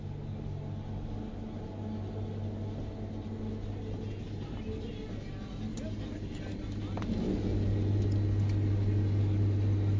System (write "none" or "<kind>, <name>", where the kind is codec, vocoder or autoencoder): none